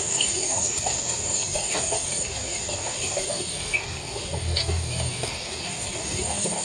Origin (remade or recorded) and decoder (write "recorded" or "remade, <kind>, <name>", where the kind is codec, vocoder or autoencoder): remade, codec, DAC